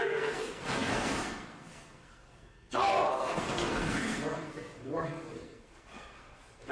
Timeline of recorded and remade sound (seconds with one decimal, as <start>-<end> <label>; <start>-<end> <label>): 0.0-6.7 remade